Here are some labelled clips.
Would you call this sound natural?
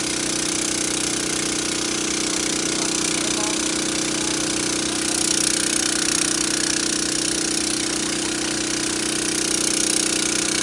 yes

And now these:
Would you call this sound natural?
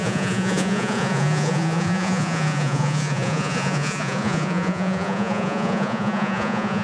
no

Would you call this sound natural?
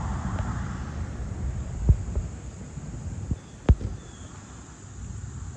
yes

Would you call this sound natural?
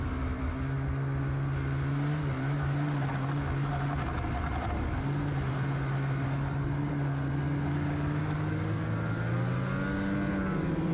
yes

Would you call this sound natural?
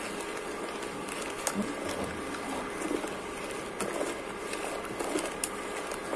yes